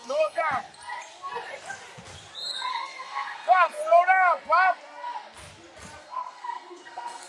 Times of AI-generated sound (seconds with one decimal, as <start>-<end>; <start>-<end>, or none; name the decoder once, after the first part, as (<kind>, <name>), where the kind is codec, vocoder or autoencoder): 0.0-0.4 (codec, SNAC); 2.7-3.8; 6.0-7.3